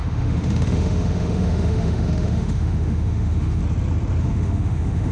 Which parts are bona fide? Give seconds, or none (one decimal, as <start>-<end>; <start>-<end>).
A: 3.6-4.2

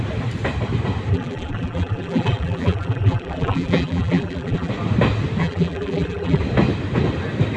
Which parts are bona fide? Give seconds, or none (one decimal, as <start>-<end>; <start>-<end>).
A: 0.0-1.1; 4.7-5.4; 6.4-7.6

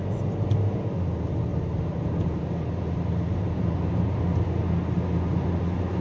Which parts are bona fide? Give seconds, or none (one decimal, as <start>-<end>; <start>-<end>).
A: 0.0-1.5; 4.2-6.0

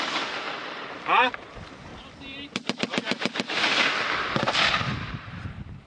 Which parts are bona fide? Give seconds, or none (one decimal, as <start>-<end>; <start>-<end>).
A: 1.9-4.4

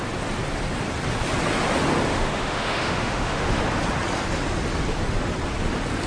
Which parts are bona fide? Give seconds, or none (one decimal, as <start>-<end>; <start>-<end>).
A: 0.0-2.1; 3.6-6.1

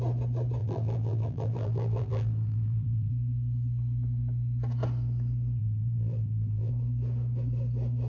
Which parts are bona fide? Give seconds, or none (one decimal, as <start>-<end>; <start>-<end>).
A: 0.0-0.6; 3.1-5.6; 6.7-8.1

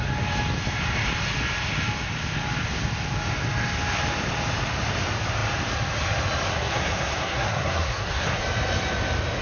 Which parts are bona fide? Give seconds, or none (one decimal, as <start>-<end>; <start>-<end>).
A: 0.0-6.5; 8.4-9.4